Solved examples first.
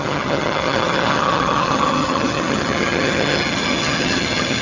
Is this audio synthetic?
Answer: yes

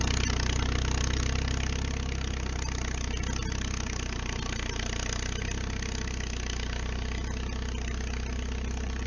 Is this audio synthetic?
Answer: no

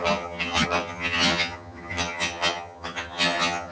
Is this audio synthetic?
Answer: yes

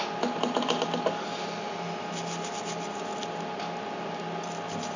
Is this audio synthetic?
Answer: no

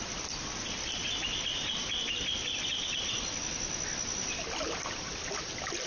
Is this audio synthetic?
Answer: no